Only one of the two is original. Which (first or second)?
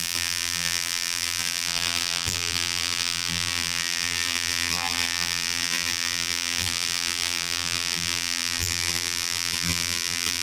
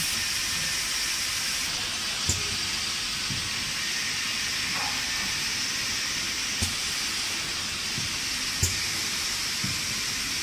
second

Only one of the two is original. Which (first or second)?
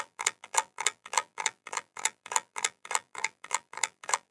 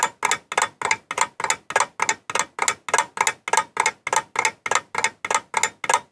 second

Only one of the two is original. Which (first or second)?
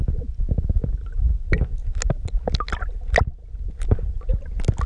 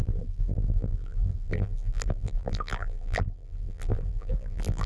first